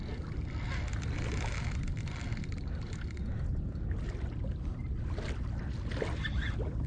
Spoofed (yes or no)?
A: no